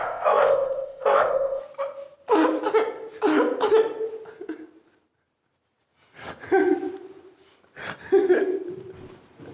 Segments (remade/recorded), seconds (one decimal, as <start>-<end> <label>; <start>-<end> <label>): 0.0-1.6 remade; 1.6-9.5 recorded

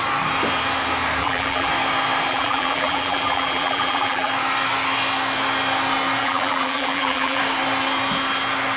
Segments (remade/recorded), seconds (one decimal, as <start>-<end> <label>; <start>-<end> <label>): 0.0-1.2 recorded; 1.2-1.7 remade; 1.7-2.3 recorded; 2.3-4.3 remade; 4.3-6.2 recorded; 6.2-7.4 remade; 7.4-8.8 recorded

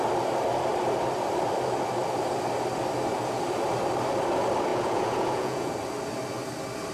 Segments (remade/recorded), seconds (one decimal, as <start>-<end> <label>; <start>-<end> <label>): 0.0-4.7 recorded; 4.7-5.7 remade; 5.7-6.9 recorded

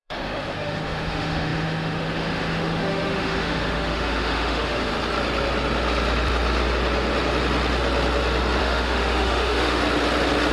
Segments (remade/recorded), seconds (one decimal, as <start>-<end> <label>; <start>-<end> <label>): 0.0-4.9 remade; 4.9-8.6 recorded; 8.6-9.8 remade; 9.8-10.5 recorded

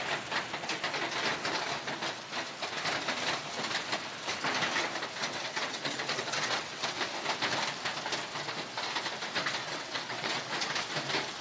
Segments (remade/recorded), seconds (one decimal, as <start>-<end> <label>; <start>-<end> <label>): 0.0-5.2 recorded; 5.2-7.0 remade; 7.0-9.6 recorded; 9.6-10.5 remade; 10.5-11.4 recorded